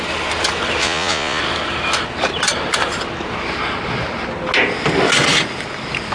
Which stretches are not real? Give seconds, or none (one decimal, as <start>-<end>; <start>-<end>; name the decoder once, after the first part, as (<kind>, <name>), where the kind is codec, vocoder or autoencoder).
0.8-1.4 (vocoder, Vocos)